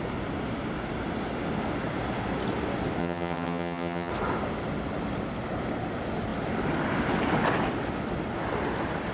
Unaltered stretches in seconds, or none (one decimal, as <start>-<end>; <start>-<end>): 0.0-3.0; 4.1-9.1